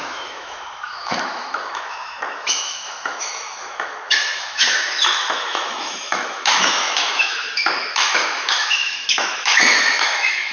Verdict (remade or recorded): remade